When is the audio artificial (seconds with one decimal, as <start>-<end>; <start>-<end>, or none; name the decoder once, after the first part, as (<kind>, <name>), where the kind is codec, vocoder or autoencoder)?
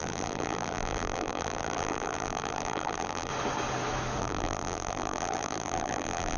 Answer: 0.0-3.3 (vocoder, BigVGAN v2); 4.2-6.4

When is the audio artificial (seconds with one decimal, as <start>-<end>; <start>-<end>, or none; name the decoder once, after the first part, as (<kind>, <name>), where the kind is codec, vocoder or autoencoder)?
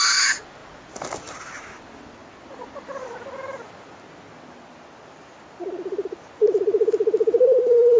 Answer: none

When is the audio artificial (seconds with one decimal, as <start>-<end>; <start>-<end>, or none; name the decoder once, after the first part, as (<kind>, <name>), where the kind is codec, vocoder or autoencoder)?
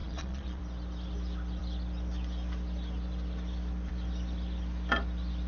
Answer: 0.0-0.6 (vocoder, Vocos)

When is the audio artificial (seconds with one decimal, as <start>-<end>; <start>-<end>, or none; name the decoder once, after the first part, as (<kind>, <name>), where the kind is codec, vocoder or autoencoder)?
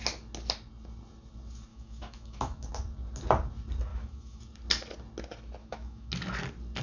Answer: 1.7-2.7 (autoencoder, DAC-VAE); 3.9-4.4; 5.6-6.1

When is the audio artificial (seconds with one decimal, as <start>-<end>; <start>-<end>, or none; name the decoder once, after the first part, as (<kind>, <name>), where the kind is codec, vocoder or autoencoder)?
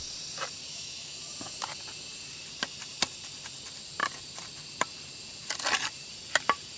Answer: 0.7-1.2 (autoencoder, DAC-VAE)